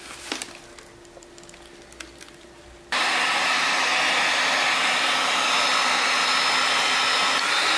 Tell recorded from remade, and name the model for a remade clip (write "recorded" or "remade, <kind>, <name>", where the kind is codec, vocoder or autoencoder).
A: recorded